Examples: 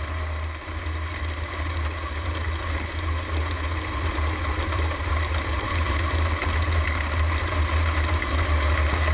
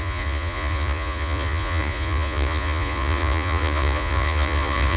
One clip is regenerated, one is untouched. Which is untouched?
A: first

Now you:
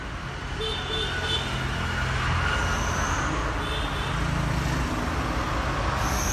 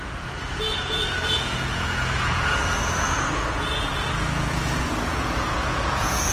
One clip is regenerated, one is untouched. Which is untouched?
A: first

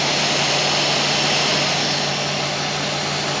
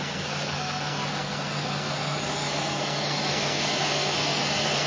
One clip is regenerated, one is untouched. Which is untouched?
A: first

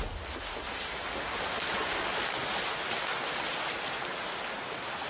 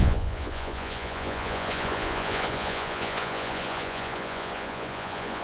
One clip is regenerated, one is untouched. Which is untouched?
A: first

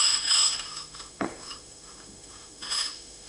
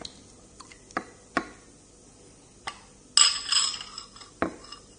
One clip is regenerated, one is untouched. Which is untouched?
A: second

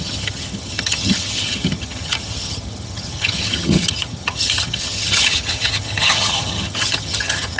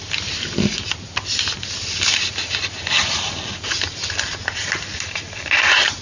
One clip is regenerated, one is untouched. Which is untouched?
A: second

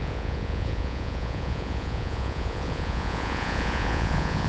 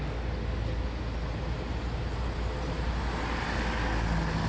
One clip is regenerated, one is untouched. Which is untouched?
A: second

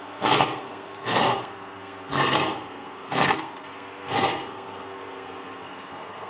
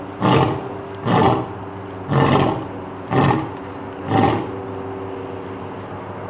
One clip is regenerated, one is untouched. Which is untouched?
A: second